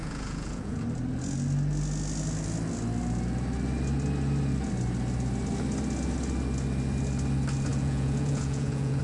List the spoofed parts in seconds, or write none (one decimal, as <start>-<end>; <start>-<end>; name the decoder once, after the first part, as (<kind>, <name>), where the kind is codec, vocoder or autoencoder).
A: 0.0-0.8 (vocoder, Vocos); 7.7-9.0